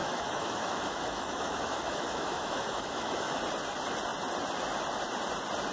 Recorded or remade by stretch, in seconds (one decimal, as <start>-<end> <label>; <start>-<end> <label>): 0.0-3.4 remade; 3.4-5.7 recorded